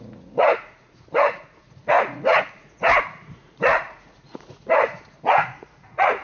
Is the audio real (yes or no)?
no